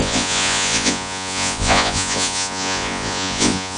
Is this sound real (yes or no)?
no